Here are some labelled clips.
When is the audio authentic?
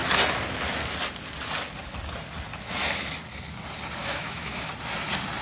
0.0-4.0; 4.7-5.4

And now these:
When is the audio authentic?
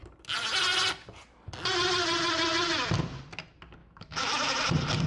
0.0-3.8; 4.5-5.1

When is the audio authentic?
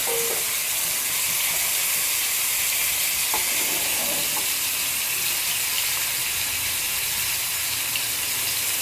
0.0-8.8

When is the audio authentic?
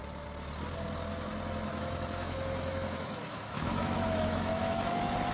0.0-1.8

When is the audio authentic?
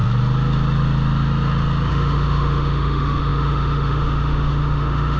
0.0-1.9